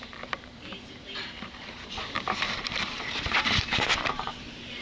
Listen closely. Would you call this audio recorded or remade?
remade